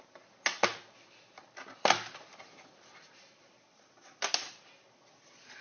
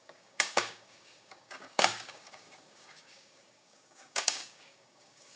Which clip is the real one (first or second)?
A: first